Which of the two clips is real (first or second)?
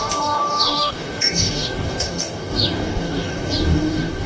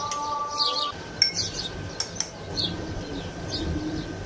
second